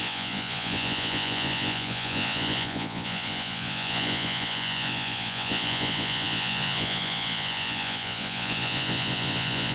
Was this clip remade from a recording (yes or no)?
yes